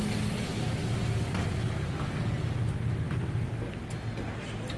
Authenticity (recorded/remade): recorded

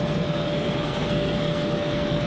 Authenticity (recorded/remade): remade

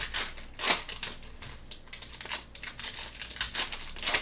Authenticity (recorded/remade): recorded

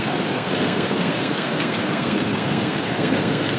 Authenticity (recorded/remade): remade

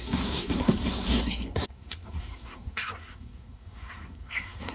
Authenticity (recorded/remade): remade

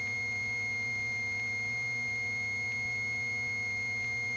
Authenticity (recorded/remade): recorded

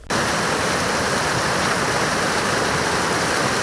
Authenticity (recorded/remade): recorded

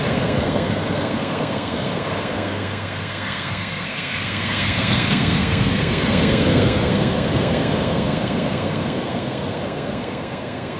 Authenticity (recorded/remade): remade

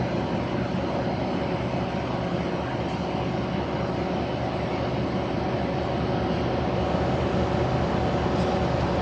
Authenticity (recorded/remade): recorded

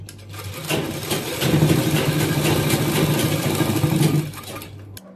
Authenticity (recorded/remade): recorded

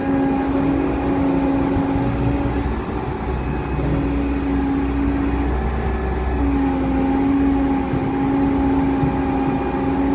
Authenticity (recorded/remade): recorded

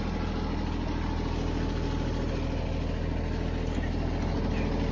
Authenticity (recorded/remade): recorded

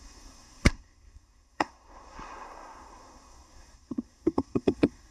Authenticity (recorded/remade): remade